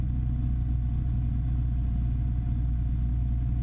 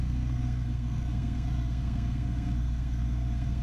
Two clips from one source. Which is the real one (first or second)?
first